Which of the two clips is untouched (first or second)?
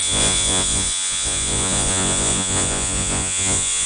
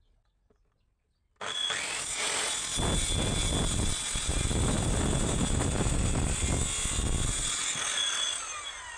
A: second